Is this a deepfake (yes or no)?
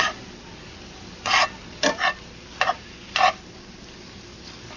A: yes